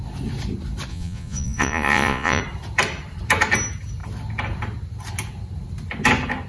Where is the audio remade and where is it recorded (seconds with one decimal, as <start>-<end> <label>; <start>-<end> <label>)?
0.0-0.9 recorded; 0.9-2.4 remade; 2.4-6.5 recorded

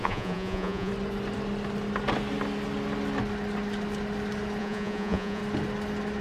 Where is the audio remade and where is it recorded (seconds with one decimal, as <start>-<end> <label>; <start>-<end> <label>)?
0.0-0.9 remade; 0.9-4.6 recorded; 4.6-5.4 remade; 5.4-6.2 recorded

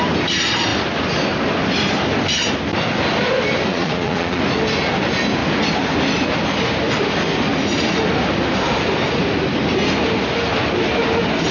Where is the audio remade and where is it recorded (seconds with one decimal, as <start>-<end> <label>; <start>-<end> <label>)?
0.0-3.7 recorded; 3.7-4.4 remade; 4.4-11.5 recorded

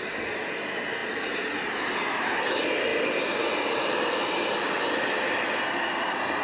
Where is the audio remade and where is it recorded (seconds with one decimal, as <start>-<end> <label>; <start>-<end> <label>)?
0.0-6.4 recorded